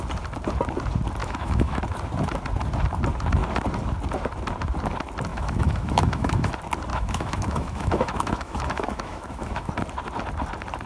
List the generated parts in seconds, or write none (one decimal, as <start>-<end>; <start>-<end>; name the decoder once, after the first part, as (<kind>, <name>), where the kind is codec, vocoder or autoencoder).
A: 1.2-1.8 (autoencoder, DAC-VAE); 5.3-6.5; 6.9-9.7